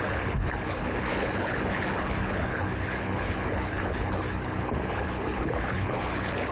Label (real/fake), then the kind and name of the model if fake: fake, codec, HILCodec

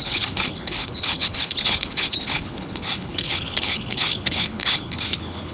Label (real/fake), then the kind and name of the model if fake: fake, codec, HILCodec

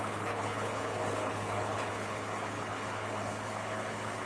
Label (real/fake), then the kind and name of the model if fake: fake, codec, HILCodec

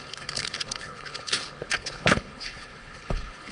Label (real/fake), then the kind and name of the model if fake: fake, codec, HILCodec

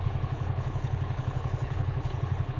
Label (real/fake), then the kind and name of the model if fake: fake, codec, HILCodec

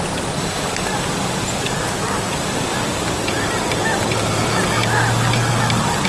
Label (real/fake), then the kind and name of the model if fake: real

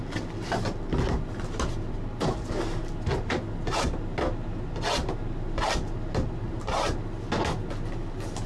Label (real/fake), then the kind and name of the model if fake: real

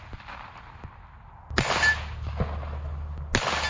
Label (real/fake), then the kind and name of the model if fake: real